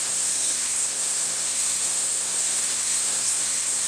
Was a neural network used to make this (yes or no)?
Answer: yes